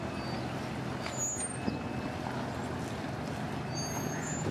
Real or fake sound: real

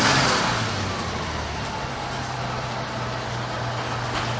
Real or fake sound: real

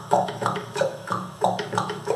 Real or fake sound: fake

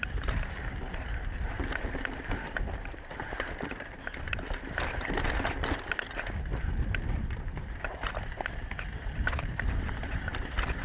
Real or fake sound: fake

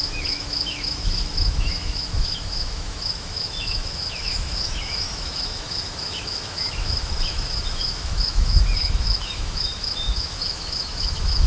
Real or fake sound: fake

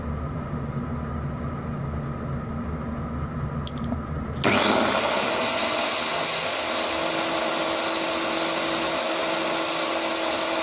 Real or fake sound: real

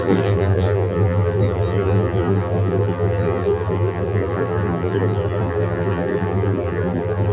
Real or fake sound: fake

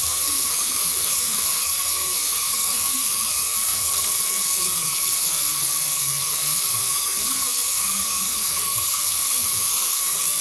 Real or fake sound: fake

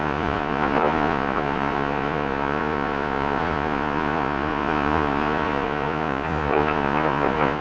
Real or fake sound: fake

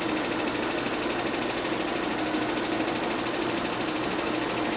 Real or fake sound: real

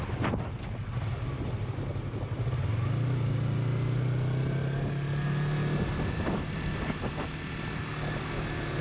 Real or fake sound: real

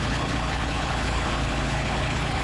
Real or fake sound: fake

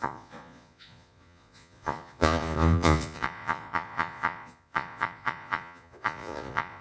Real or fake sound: fake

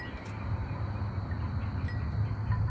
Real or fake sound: real